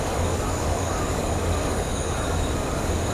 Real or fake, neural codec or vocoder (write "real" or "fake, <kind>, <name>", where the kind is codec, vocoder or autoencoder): fake, codec, DAC